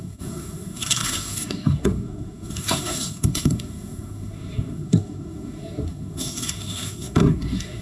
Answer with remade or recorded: remade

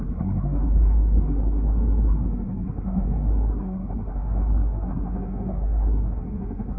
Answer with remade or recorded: remade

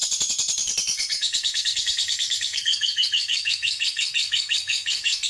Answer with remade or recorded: remade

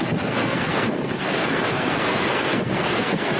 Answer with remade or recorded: remade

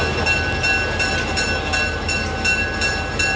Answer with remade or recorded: recorded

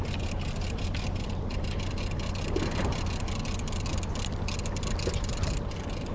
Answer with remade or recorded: recorded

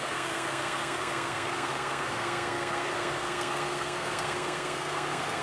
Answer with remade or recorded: remade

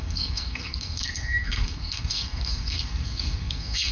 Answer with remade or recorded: remade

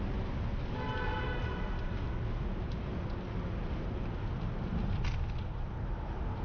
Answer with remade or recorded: recorded